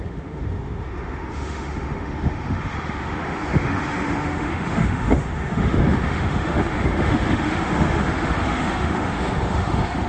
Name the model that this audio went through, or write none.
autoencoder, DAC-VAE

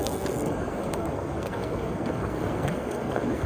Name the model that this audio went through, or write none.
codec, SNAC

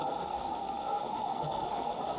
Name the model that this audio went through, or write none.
codec, SNAC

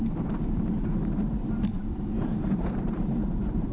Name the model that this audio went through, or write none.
vocoder, BigVGAN v2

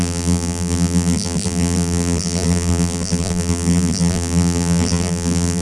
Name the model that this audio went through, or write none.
vocoder, BigVGAN v2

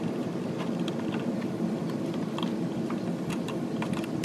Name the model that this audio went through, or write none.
none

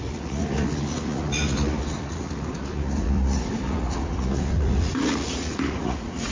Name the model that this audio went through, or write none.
vocoder, Vocos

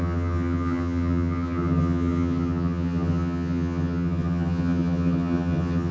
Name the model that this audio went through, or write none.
vocoder, HiFi-GAN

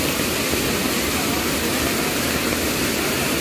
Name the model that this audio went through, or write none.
none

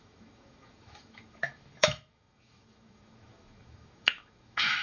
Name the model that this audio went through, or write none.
autoencoder, DAC-VAE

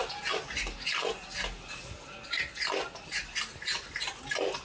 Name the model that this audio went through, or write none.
none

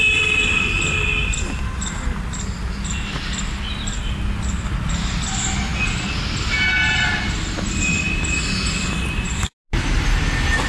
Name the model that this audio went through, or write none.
none